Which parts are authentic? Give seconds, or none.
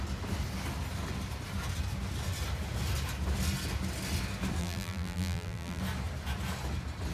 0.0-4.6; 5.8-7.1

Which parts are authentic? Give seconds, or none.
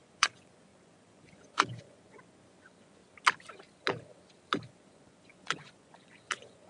3.0-4.7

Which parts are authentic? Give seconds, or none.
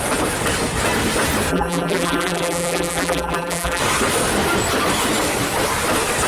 0.0-1.5; 3.8-6.3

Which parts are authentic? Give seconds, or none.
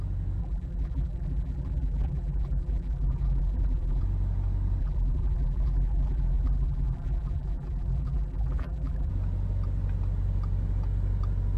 0.0-0.4; 4.0-4.8; 9.1-11.6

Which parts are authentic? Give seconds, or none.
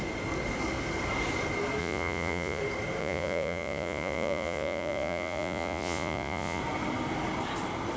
0.0-1.8; 2.6-3.0; 6.6-8.0